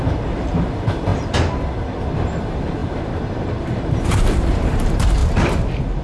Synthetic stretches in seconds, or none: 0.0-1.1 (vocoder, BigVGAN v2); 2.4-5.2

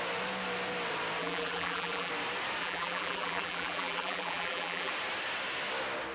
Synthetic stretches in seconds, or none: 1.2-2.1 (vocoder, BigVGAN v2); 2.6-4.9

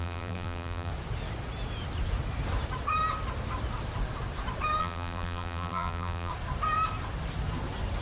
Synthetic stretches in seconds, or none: 0.0-0.9 (vocoder, BigVGAN v2); 4.8-6.3